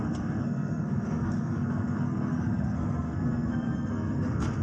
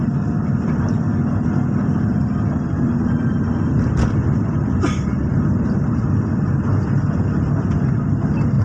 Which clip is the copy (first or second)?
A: first